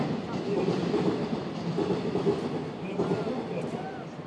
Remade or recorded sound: recorded